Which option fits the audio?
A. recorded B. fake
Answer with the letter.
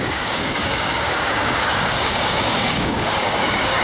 B